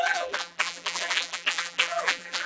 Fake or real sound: fake